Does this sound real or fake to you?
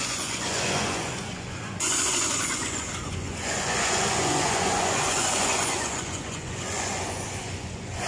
fake